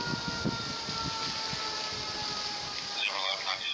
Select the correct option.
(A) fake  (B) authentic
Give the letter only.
B